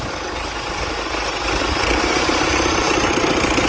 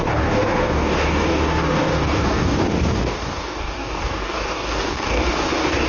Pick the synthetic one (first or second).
second